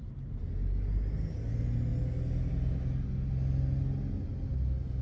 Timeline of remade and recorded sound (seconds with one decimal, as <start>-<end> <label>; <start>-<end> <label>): 0.0-5.0 recorded